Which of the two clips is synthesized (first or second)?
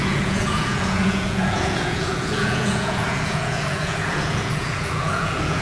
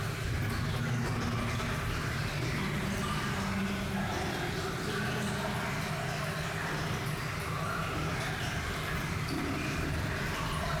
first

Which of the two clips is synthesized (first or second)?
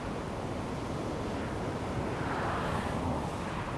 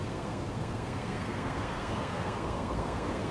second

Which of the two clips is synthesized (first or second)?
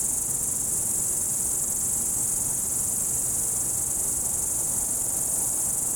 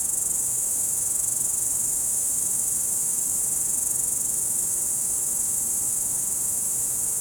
second